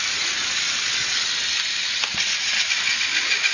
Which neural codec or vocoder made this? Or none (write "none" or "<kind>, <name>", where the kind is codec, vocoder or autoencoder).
none